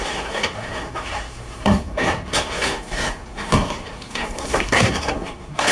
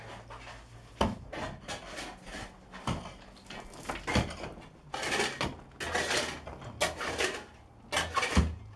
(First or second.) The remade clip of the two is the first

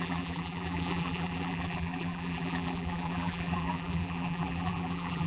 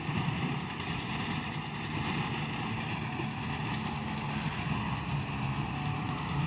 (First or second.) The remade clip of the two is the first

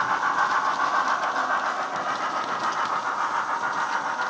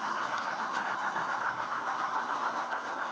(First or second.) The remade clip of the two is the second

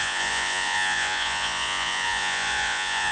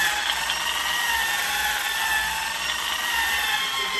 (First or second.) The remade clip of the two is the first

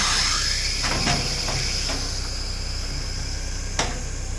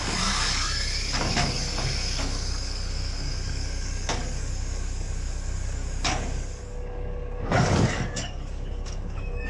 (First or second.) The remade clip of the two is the second